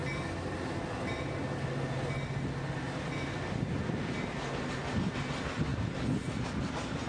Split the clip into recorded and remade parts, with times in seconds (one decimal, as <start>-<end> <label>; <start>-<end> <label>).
0.0-7.1 recorded